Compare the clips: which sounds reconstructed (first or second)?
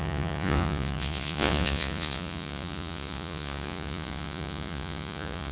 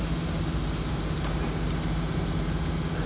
first